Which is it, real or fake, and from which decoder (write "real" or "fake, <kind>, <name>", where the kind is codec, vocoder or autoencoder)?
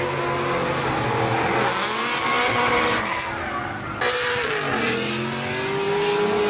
real